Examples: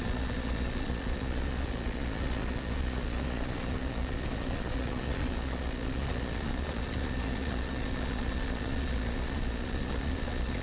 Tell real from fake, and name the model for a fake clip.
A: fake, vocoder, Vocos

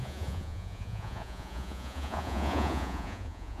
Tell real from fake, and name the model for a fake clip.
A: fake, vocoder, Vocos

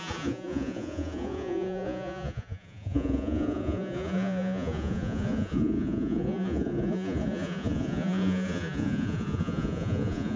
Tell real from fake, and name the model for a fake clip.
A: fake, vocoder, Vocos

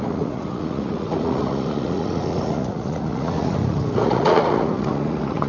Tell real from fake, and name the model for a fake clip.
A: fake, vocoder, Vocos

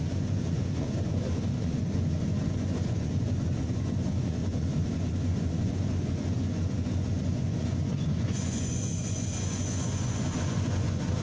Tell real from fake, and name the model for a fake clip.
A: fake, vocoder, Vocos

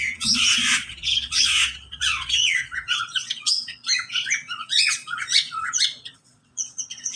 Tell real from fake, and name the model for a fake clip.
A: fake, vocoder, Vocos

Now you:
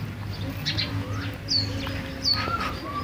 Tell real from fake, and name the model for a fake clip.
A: real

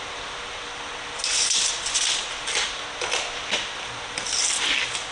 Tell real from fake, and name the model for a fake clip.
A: real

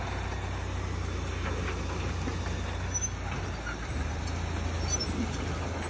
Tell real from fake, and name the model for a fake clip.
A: real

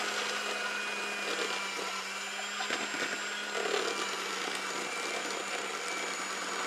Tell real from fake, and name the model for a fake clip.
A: real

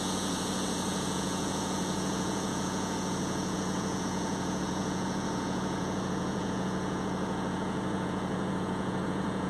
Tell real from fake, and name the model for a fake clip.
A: fake, vocoder, Vocos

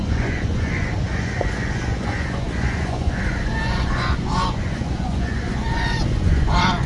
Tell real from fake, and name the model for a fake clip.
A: fake, vocoder, Vocos